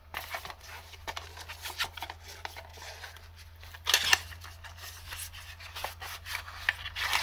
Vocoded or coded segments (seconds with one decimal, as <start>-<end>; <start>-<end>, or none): none